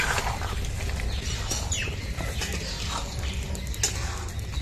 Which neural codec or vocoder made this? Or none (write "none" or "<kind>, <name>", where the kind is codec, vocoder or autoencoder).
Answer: none